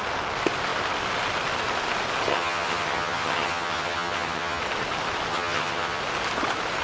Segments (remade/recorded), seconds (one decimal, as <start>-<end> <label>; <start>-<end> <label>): 0.0-2.3 recorded; 2.3-4.6 remade; 4.6-5.3 recorded; 5.3-6.0 remade; 6.0-6.8 recorded